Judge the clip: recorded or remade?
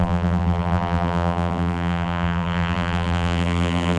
remade